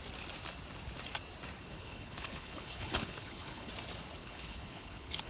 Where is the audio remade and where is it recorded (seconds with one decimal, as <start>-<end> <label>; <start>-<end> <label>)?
0.0-1.7 recorded; 1.7-3.7 remade; 3.7-4.2 recorded; 4.2-5.3 remade